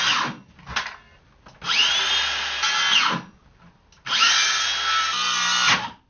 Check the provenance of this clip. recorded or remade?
recorded